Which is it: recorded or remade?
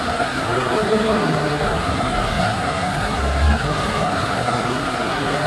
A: remade